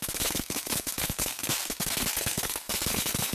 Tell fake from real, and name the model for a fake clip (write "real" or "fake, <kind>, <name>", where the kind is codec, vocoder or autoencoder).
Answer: fake, codec, SNAC